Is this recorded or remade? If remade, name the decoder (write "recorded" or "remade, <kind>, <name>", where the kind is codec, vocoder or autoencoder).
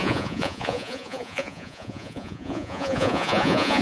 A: remade, vocoder, Vocos